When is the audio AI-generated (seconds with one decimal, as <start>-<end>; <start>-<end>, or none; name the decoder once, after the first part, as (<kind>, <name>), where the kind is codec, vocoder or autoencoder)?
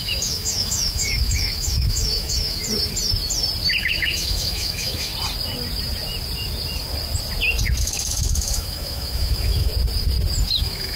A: 0.0-2.6 (autoencoder, DAC-VAE); 3.8-5.1; 7.8-9.7; 10.6-11.0